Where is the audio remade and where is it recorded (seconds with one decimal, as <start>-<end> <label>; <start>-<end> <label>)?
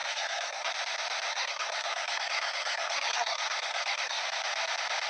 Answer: 0.0-0.7 remade; 0.7-1.3 recorded; 1.3-4.2 remade; 4.2-5.1 recorded